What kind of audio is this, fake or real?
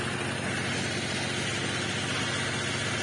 real